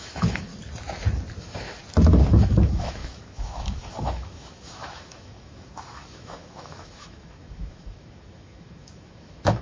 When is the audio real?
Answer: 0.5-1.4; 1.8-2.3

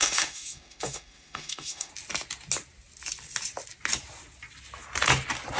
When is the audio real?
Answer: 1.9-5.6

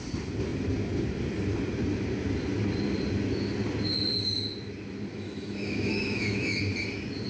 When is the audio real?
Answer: 0.0-5.1; 6.6-7.3